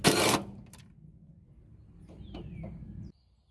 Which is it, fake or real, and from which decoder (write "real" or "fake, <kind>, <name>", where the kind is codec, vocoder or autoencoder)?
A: real